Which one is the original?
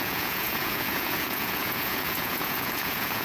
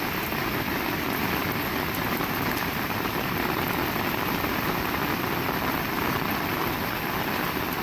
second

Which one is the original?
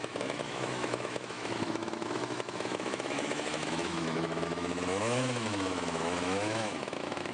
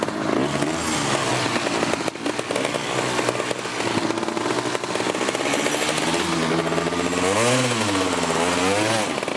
second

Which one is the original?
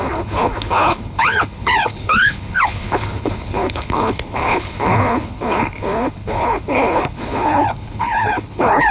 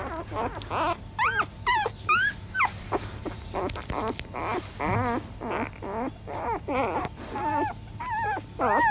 second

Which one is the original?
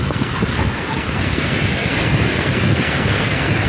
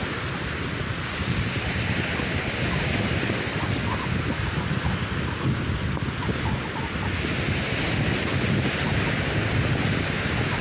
second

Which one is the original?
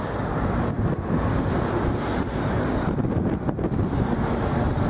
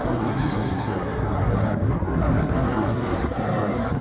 first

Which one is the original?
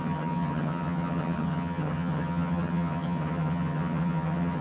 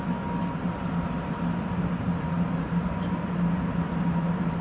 second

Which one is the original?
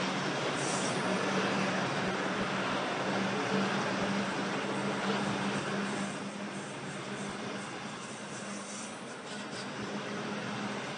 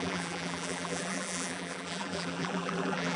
first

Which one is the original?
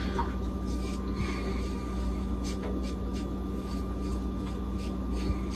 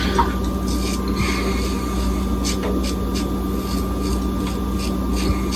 second